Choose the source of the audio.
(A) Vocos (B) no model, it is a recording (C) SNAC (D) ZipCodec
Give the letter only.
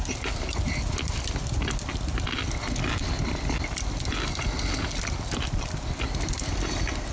B